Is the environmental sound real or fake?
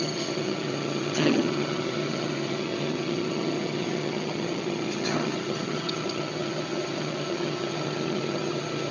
fake